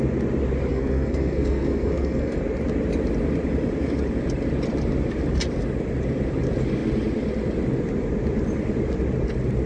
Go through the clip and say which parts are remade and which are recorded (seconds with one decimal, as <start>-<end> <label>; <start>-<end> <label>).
0.0-0.7 recorded; 0.7-2.4 remade; 2.4-9.7 recorded